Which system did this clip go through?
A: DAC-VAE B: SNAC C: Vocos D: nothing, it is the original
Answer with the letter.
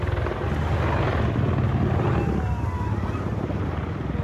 D